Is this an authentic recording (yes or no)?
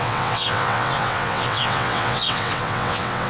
no